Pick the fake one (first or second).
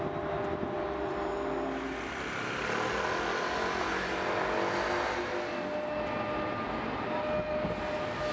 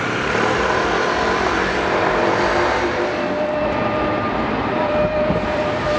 second